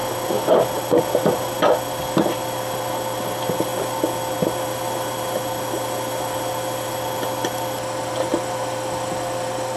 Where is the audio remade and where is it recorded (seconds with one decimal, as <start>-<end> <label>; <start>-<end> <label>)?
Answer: 0.0-1.9 recorded; 1.9-9.8 remade